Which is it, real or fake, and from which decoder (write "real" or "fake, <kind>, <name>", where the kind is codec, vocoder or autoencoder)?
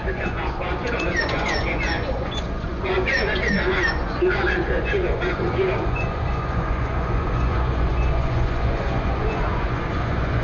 fake, vocoder, Vocos